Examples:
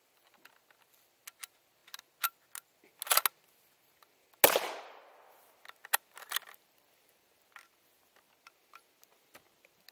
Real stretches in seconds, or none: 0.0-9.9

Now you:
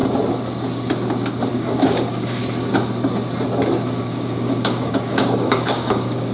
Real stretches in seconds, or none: 0.0-1.5; 2.4-4.0

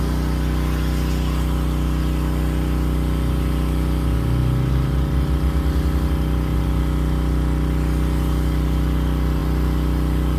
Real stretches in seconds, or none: 0.0-10.4

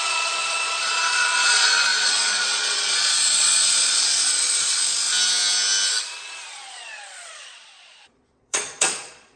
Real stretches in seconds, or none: 4.8-6.5

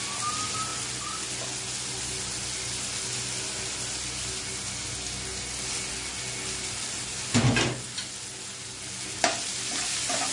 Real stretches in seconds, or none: 0.0-10.3

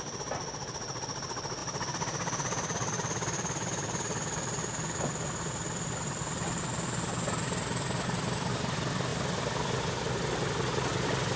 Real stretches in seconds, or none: 0.0-1.6; 6.6-9.1; 9.8-11.4

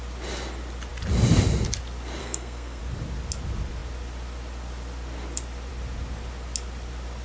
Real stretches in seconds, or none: 0.0-2.2; 2.8-7.2